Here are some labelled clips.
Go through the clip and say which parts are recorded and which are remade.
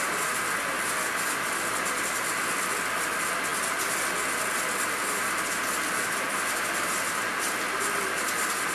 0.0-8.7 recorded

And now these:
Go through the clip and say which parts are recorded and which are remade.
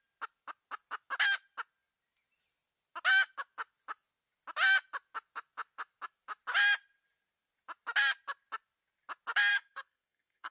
0.0-9.5 recorded; 9.5-10.5 remade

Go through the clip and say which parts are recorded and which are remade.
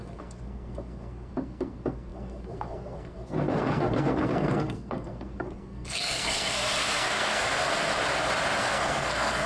0.0-7.9 remade; 7.9-8.6 recorded; 8.6-9.5 remade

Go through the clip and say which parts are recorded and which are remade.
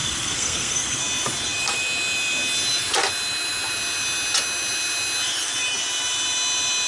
0.0-1.0 remade; 1.0-6.9 recorded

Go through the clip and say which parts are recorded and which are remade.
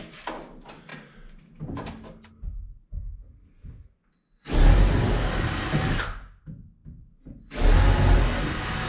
0.0-8.9 recorded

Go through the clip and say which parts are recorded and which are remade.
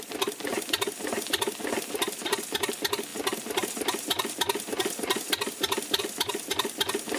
0.0-7.2 recorded